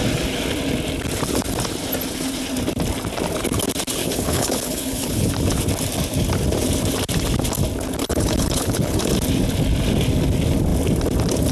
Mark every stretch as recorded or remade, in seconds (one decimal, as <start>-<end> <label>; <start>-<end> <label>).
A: 0.0-4.0 recorded; 4.0-5.3 remade; 5.3-8.0 recorded; 8.0-9.0 remade; 9.0-11.5 recorded